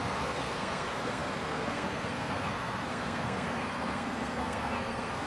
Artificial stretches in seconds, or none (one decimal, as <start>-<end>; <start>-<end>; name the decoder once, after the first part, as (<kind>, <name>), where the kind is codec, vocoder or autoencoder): 0.0-5.3 (codec, SNAC)